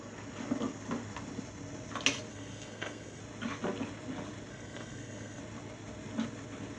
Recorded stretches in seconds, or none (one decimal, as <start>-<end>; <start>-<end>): 0.0-2.3; 3.2-4.5; 5.4-6.8

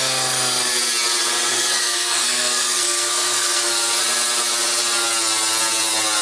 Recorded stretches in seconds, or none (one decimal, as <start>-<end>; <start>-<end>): 0.0-1.5; 3.7-6.2

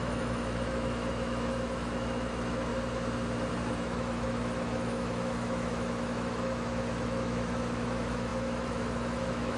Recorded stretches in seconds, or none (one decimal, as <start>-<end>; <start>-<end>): 2.7-3.7

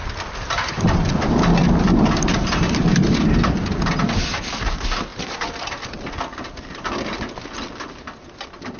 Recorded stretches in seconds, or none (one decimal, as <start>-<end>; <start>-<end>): 1.1-8.8

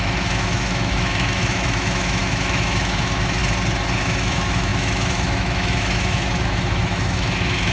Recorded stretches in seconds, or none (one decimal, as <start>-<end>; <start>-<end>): 3.4-4.0

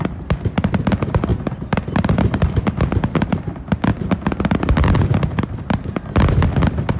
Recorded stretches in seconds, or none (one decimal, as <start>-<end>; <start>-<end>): 3.9-4.4